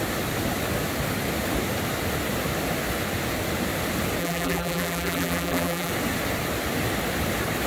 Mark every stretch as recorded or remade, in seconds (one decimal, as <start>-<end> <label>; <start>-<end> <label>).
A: 0.0-4.2 recorded; 4.2-5.9 remade; 5.9-7.7 recorded